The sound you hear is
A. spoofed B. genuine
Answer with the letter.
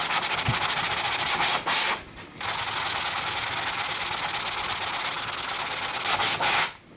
B